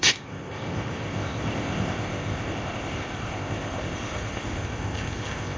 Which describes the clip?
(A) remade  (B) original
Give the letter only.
A